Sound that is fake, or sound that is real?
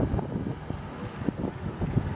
real